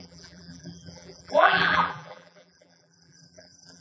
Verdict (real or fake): fake